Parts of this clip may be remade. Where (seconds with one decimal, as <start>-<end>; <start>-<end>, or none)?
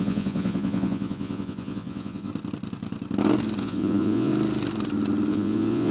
0.0-2.3; 3.6-4.3; 5.3-5.9